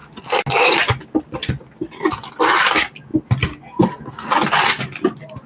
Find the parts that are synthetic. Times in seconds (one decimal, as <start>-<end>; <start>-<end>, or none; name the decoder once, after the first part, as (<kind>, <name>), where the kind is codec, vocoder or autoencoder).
none